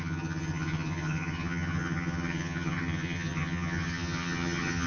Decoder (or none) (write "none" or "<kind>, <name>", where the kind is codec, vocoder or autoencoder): vocoder, HiFi-GAN